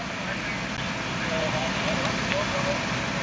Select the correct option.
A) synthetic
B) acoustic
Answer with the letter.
B